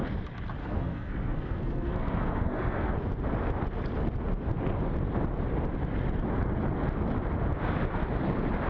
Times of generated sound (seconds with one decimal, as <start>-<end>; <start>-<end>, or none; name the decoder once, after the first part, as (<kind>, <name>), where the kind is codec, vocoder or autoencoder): 0.6-2.9 (codec, SNAC)